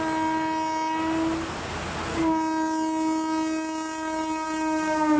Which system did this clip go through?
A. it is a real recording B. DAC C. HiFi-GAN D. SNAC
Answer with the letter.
A